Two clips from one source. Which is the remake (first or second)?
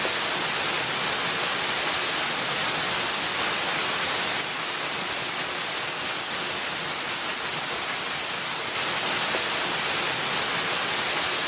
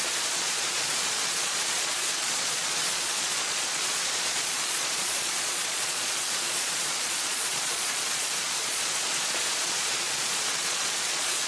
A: second